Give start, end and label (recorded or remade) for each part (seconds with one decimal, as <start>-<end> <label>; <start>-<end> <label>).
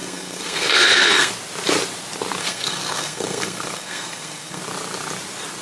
0.0-1.3 remade; 1.3-2.4 recorded; 2.4-4.6 remade; 4.6-5.6 recorded